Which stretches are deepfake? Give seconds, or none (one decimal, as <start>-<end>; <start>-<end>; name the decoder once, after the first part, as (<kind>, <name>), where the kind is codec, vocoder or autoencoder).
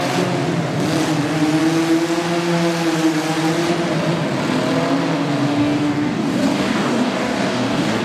5.6-8.0 (codec, DAC)